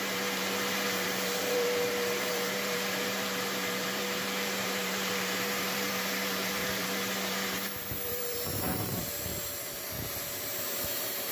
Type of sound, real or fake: fake